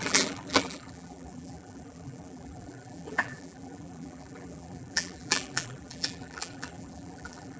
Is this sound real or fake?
fake